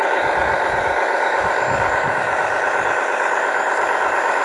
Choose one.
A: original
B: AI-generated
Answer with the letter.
B